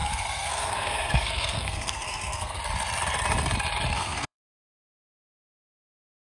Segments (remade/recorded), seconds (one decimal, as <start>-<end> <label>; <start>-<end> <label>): 0.0-2.6 remade; 2.6-3.9 recorded; 3.9-4.9 remade; 4.9-6.4 recorded